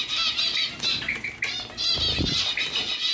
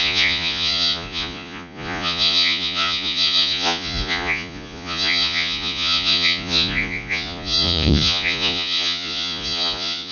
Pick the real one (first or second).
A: first